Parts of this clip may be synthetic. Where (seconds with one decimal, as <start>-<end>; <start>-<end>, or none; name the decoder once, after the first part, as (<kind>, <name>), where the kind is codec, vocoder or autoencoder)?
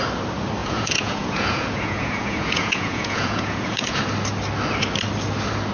0.6-4.0 (vocoder, Vocos)